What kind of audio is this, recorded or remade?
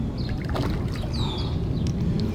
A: recorded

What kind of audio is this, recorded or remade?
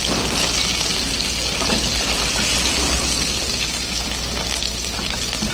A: recorded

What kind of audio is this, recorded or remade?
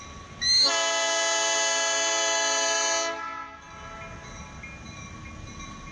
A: recorded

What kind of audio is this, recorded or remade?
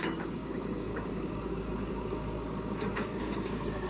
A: remade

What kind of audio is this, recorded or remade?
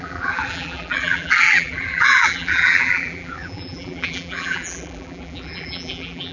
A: remade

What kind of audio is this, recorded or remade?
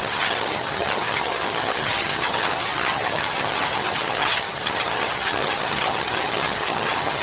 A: remade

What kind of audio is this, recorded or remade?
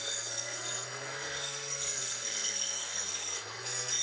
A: remade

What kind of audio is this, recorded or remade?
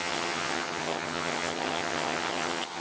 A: remade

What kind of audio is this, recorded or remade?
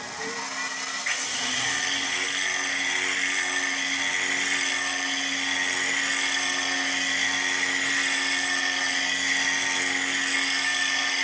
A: recorded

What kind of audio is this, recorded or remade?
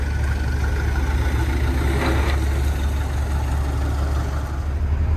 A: recorded